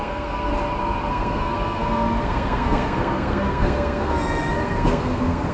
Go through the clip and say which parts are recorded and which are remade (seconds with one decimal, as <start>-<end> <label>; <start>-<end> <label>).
0.0-0.5 remade; 0.5-1.1 recorded; 1.1-5.5 remade